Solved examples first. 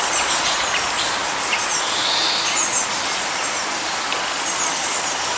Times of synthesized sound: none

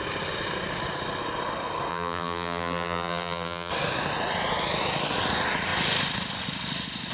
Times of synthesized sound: 1.9-3.7 (vocoder, BigVGAN v2)

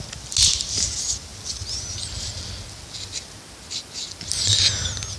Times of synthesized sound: none

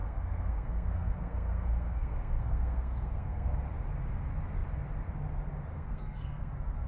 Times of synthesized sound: 0.0-3.6 (codec, SNAC); 5.7-6.5

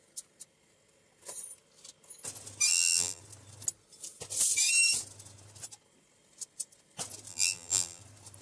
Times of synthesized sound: 2.7-3.2 (vocoder, BigVGAN v2); 7.3-8.0

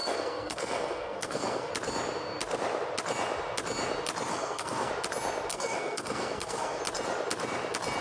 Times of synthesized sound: 0.0-1.7 (codec, SNAC); 4.3-4.9; 5.5-6.8